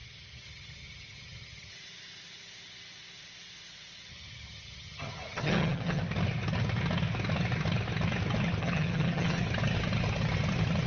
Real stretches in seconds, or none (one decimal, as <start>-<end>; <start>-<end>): 1.7-4.1; 6.0-8.6; 9.4-10.9